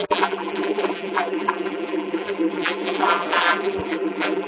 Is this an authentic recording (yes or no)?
no